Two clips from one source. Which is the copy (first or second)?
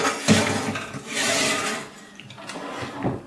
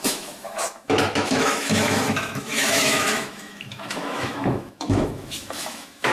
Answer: second